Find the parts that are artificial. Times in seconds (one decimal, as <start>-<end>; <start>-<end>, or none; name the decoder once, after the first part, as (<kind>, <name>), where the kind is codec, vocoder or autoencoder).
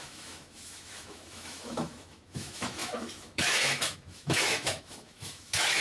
0.0-5.8 (autoencoder, DAC-VAE)